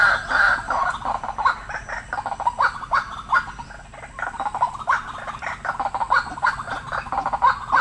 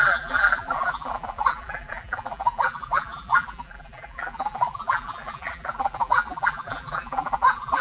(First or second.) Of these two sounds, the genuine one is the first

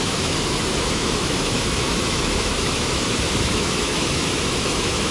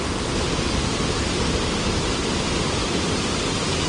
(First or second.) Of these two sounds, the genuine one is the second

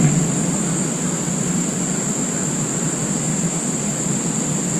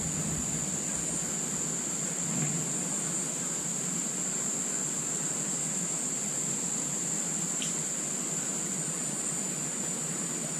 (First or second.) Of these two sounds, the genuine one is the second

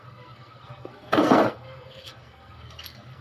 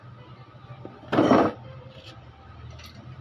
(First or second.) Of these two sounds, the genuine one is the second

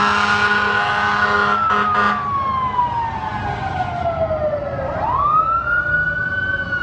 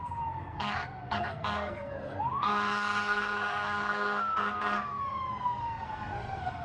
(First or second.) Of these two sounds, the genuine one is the first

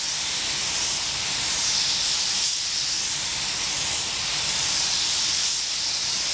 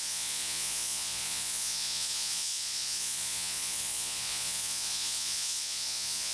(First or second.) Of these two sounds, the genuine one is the first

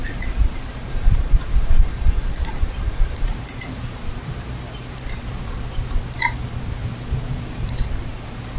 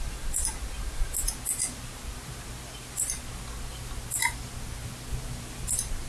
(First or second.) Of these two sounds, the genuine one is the second